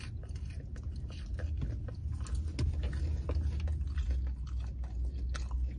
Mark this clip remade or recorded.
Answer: recorded